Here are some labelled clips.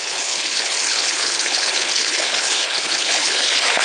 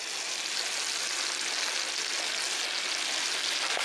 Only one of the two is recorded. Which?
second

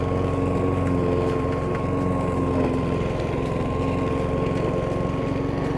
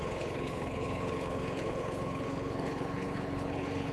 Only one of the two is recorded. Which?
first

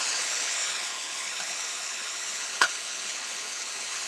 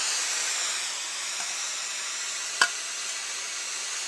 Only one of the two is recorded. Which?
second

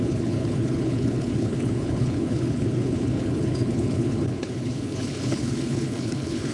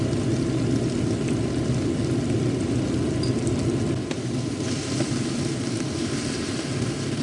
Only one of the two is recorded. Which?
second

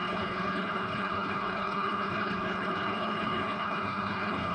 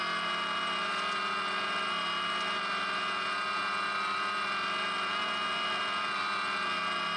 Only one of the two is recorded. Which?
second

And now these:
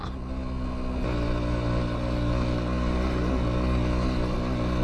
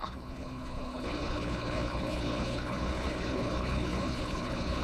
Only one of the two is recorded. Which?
first